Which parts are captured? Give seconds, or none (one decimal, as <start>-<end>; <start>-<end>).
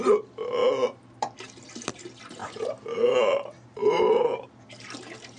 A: 0.0-0.6; 1.7-2.4